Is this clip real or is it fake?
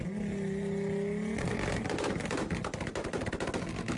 real